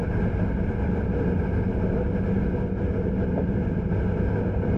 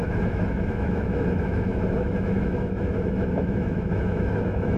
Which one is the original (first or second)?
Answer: first